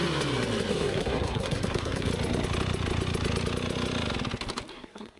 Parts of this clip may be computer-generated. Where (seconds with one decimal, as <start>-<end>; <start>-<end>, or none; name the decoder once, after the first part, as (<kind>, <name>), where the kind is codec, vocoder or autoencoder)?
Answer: 0.7-2.1 (codec, SNAC); 4.7-5.2